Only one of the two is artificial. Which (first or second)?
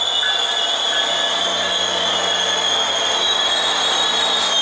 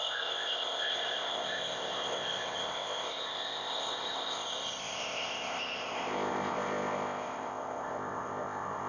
second